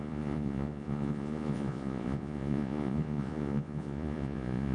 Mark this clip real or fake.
fake